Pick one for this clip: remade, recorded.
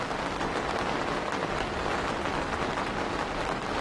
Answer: recorded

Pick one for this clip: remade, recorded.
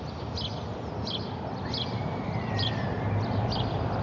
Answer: recorded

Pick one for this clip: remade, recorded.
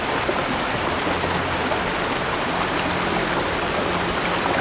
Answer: recorded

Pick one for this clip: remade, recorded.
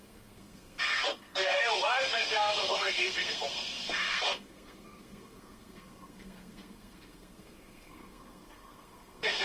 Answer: remade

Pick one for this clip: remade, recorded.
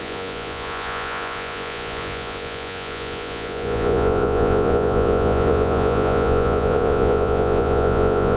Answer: remade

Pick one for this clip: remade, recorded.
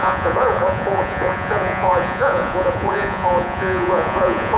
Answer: remade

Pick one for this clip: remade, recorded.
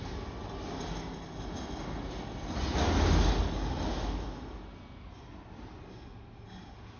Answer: recorded